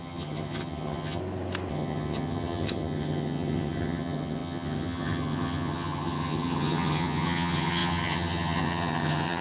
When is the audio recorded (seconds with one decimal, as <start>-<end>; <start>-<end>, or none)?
1.2-1.7